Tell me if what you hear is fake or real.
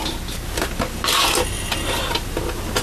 real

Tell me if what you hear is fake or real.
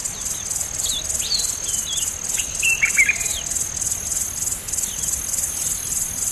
real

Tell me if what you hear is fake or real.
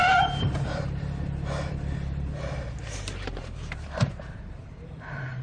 fake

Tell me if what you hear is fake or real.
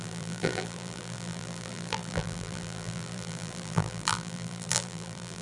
fake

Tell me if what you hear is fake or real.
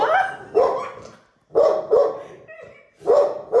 real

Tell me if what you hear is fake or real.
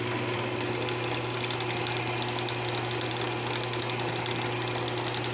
real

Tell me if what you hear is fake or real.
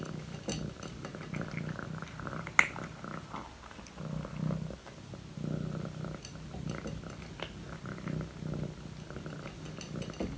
real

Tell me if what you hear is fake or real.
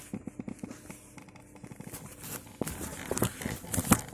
real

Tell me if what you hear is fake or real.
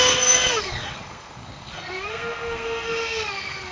fake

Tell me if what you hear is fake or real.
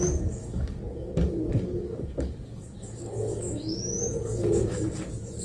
fake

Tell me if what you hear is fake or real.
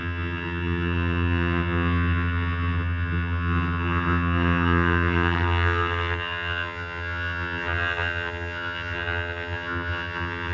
fake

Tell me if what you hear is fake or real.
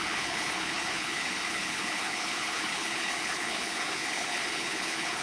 fake